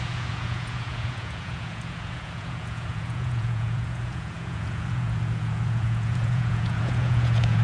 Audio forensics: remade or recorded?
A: remade